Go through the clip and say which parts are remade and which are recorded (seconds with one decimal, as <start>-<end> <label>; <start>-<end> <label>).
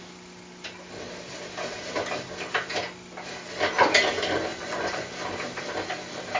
0.0-4.5 recorded; 4.5-5.1 remade; 5.1-6.4 recorded